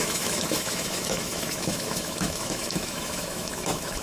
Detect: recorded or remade remade